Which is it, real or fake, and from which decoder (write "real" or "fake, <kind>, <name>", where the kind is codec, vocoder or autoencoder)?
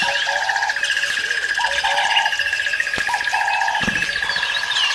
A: real